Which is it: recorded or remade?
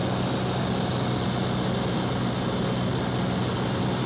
recorded